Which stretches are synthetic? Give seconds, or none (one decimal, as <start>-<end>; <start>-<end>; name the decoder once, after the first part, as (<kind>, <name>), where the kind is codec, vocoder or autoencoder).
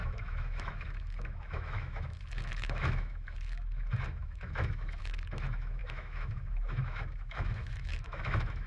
0.0-8.7 (autoencoder, DAC-VAE)